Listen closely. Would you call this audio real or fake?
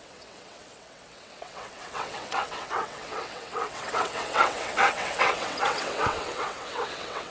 fake